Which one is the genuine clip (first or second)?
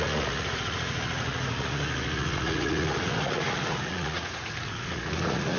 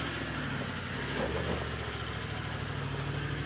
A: second